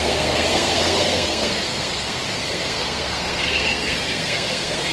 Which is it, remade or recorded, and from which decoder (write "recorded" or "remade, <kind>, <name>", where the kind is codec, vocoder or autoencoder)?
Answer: remade, codec, SNAC